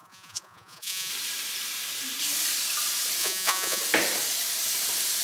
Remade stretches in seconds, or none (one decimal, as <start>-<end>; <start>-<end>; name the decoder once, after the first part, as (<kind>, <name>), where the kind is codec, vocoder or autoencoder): 0.0-1.1 (vocoder, Vocos); 3.2-3.8